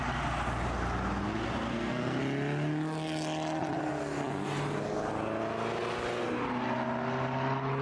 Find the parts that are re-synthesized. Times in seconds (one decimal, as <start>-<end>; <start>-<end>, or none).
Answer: 1.7-2.2